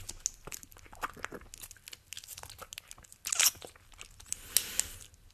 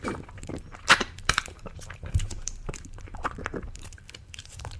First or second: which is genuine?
first